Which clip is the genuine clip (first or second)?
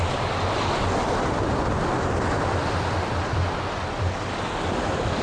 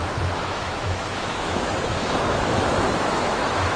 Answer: first